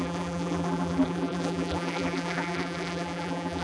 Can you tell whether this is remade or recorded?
remade